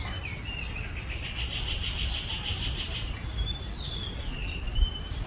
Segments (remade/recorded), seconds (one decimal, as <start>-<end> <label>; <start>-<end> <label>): 0.0-2.5 recorded; 2.5-3.7 remade; 3.7-4.4 recorded; 4.4-5.3 remade